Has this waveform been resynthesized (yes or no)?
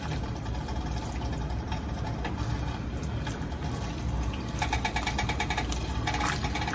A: no